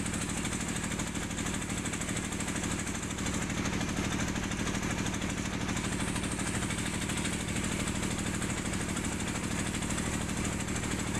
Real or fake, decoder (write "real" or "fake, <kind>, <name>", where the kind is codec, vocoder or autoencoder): real